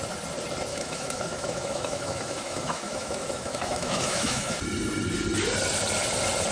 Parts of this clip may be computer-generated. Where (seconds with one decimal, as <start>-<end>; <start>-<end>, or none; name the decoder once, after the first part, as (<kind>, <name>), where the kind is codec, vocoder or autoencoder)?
0.7-4.6 (autoencoder, DAC-VAE)